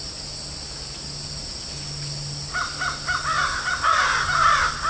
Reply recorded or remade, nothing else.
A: recorded